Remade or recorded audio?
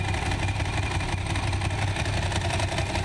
recorded